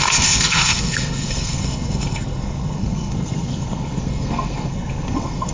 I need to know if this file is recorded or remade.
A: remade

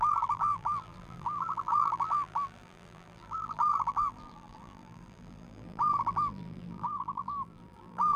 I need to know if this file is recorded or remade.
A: remade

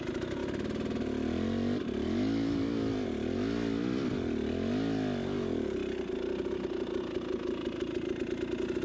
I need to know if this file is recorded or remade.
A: recorded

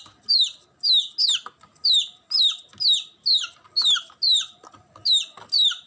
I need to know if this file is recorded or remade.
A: recorded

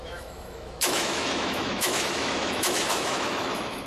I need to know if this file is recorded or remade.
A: remade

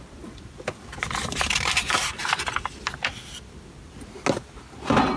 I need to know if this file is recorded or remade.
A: recorded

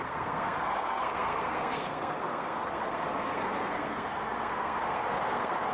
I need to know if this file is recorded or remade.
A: remade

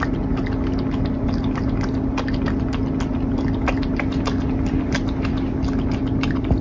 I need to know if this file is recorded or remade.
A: recorded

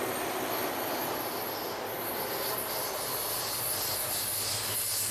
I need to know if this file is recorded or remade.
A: recorded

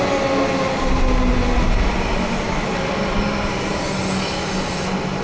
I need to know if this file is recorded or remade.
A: recorded